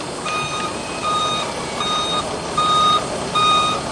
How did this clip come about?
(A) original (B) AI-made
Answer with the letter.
B